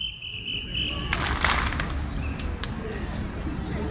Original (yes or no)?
yes